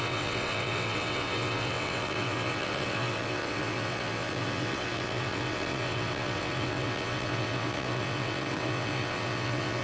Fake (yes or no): yes